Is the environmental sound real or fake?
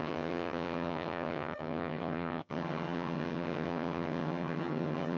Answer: fake